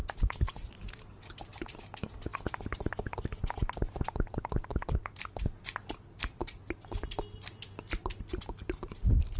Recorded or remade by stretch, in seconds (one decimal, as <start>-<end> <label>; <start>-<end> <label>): 0.0-9.4 recorded